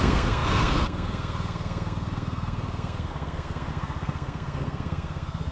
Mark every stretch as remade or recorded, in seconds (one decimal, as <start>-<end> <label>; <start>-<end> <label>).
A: 0.0-5.5 remade